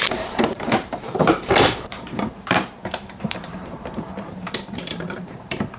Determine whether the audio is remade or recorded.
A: remade